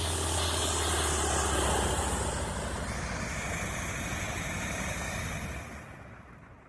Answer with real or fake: real